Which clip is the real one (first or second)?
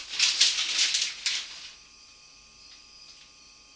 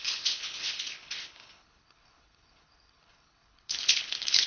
first